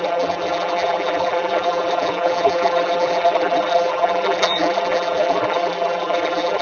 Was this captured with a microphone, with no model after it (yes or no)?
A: no